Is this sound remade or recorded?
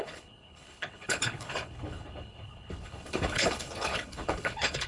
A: remade